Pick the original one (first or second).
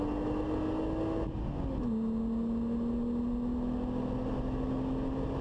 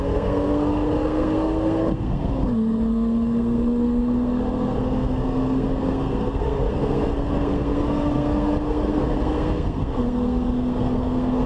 first